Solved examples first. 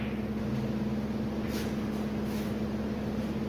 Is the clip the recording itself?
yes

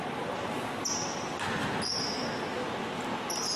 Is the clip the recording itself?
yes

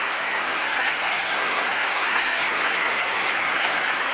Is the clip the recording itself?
no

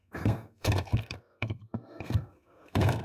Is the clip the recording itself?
no